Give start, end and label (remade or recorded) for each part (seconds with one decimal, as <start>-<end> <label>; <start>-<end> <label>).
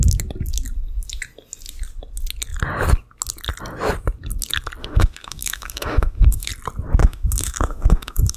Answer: 0.0-4.8 recorded; 4.8-6.5 remade; 6.5-7.0 recorded; 7.0-8.4 remade